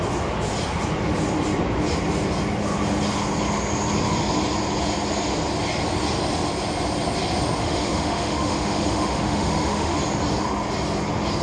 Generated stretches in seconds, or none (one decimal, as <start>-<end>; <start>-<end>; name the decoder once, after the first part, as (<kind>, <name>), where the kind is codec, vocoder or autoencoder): 7.6-10.0 (autoencoder, DAC-VAE)